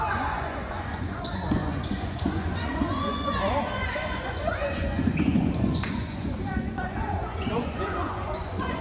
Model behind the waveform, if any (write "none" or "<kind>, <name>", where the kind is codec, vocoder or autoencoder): vocoder, Vocos